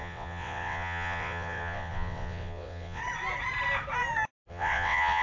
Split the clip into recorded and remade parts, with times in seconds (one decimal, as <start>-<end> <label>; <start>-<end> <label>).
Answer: 0.0-3.0 remade; 3.0-4.5 recorded; 4.5-5.2 remade